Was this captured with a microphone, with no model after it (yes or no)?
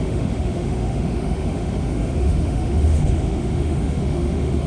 no